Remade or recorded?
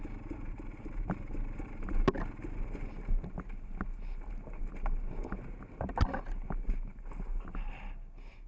recorded